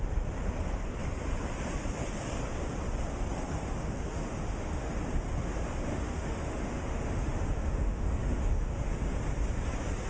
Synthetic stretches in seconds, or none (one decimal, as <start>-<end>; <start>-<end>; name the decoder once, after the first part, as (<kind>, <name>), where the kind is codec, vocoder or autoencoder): 3.6-4.9 (autoencoder, DAC-VAE); 5.9-8.9